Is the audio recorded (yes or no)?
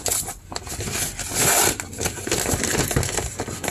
yes